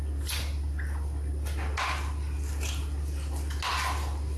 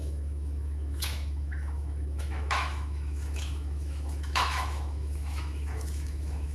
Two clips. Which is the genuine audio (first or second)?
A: first